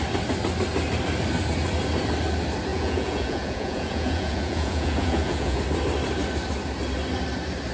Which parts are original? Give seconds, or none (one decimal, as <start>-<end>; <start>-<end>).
0.0-2.7; 5.6-7.7